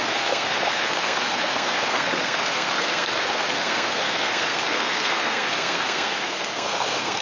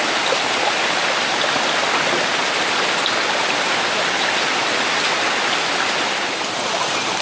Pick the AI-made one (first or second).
first